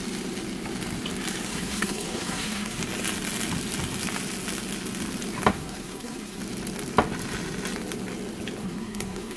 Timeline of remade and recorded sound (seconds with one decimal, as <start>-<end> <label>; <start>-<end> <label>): 0.0-1.5 recorded; 1.5-2.8 remade; 2.8-5.5 recorded; 5.5-6.4 remade; 6.4-8.6 recorded; 8.6-9.4 remade